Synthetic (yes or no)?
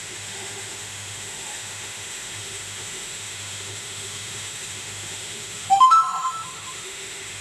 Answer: yes